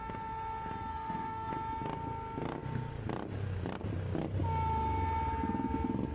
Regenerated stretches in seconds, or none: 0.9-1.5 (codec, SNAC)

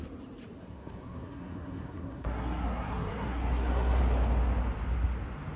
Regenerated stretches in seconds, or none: 0.6-4.0 (codec, SNAC)

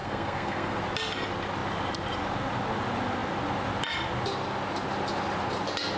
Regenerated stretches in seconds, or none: 0.0-0.8 (codec, SNAC)